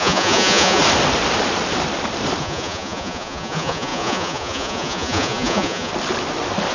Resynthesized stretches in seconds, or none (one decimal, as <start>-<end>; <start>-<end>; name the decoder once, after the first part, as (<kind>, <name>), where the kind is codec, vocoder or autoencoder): 0.0-0.8 (vocoder, Vocos); 2.4-5.9